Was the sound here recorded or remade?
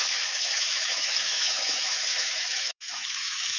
remade